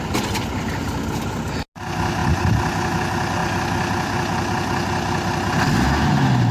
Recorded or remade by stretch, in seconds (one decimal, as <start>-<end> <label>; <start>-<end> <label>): 0.0-6.5 recorded